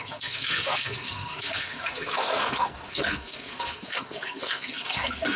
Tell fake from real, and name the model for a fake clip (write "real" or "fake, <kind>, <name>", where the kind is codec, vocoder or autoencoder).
fake, codec, SNAC